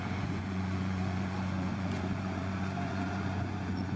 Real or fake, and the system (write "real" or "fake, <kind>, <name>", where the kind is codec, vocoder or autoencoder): fake, vocoder, Vocos